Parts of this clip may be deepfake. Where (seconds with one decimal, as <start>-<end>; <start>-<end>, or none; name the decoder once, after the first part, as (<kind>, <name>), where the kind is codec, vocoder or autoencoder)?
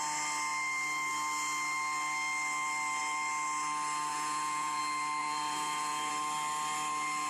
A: 4.1-4.8 (vocoder, Vocos); 5.2-6.1